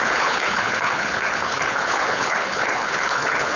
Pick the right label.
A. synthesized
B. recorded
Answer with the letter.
A